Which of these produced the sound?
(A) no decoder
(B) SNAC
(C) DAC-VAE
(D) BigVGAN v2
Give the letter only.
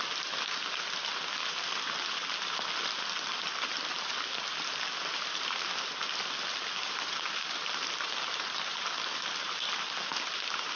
A